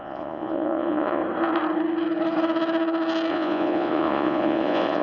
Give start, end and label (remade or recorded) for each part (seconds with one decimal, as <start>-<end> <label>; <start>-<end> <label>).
0.0-1.2 remade; 1.2-3.3 recorded; 3.3-5.0 remade